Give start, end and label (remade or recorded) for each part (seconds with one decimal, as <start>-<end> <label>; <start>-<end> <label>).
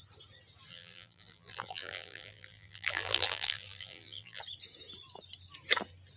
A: 0.0-0.7 recorded; 0.7-4.4 remade; 4.4-6.2 recorded